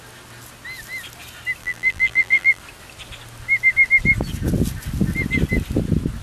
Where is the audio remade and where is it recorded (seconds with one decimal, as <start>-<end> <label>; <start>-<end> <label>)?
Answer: 0.0-1.6 recorded; 1.6-2.6 remade; 2.6-6.2 recorded